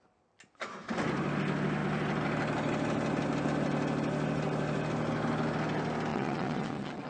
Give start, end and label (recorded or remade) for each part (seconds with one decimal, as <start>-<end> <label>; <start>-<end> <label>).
0.0-6.1 recorded; 6.1-7.1 remade